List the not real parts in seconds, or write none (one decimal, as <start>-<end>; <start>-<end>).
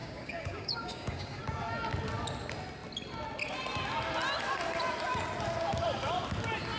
0.0-1.4